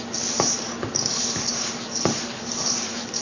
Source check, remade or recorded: recorded